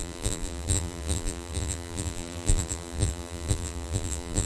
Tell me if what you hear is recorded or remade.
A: remade